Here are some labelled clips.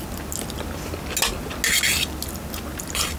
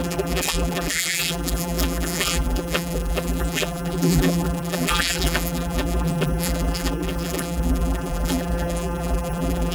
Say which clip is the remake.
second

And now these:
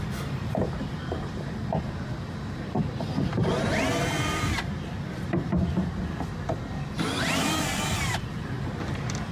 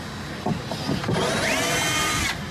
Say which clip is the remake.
first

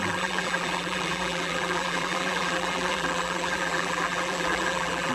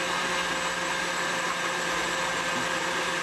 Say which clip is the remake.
first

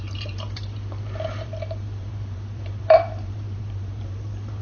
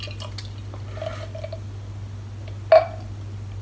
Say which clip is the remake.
first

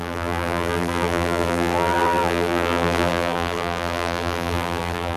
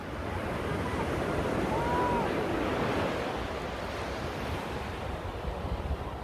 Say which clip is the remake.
first